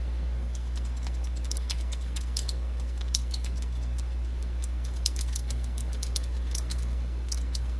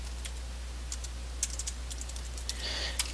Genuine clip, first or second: second